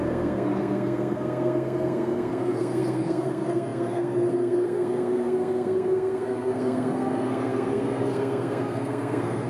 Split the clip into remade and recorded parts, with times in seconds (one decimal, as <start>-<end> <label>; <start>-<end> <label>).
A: 0.0-9.5 remade